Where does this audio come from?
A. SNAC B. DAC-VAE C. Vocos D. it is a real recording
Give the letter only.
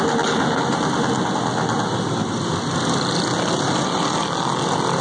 D